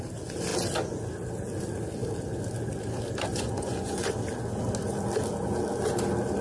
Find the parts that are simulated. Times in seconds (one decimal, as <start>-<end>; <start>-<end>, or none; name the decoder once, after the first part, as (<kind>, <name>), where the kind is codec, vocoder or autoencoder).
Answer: 3.3-4.1 (vocoder, Vocos)